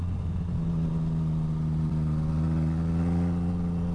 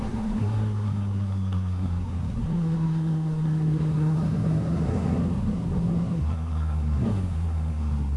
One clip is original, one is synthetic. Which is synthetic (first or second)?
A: second